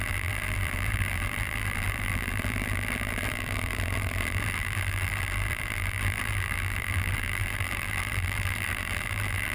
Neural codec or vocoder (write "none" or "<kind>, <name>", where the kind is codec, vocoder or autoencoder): vocoder, BigVGAN v2